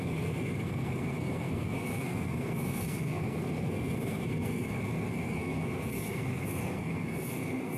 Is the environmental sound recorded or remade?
remade